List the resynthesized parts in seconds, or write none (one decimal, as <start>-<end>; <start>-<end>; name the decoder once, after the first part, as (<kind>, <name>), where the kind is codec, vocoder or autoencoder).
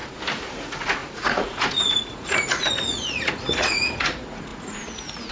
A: 0.5-5.3 (vocoder, Vocos)